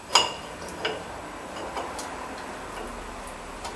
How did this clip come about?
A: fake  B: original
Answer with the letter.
B